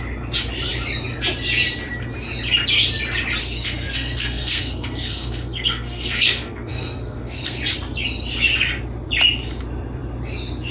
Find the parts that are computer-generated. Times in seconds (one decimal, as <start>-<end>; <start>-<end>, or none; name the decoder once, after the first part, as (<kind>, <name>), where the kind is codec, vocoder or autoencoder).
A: 3.4-7.6 (codec, SNAC)

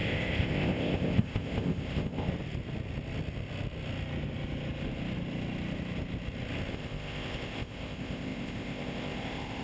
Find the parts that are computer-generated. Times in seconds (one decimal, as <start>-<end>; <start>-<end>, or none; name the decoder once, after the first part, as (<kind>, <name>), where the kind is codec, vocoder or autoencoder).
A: 0.0-2.3 (codec, ZipCodec); 6.7-9.6

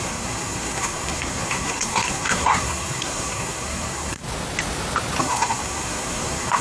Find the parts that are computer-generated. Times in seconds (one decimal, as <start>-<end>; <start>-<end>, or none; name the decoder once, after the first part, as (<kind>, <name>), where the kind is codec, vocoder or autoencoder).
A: 0.0-4.2 (codec, SNAC); 5.2-6.6

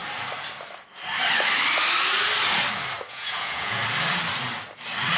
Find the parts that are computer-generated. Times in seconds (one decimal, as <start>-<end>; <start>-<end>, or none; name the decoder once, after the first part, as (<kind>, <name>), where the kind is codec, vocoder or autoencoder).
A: 3.1-3.8 (vocoder, Vocos)

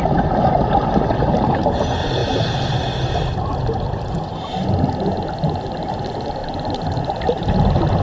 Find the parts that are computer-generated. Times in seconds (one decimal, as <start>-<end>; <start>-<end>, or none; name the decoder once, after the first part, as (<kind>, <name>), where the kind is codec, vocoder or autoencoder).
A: none

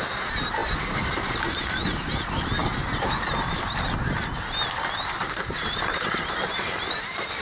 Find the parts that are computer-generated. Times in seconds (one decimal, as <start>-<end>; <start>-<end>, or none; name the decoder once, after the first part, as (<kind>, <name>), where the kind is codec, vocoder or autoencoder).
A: 0.0-2.6 (vocoder, BigVGAN v2); 5.2-7.4

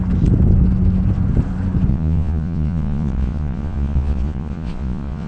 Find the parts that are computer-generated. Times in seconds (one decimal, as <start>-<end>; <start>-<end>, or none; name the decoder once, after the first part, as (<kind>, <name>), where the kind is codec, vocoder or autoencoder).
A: 1.9-5.3 (vocoder, Vocos)